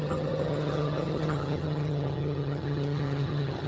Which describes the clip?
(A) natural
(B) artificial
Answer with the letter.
B